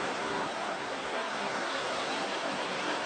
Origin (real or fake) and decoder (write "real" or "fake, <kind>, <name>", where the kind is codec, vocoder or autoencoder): fake, codec, SNAC